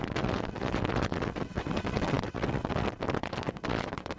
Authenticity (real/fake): fake